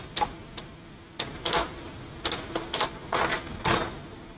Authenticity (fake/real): real